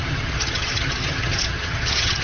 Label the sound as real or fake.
fake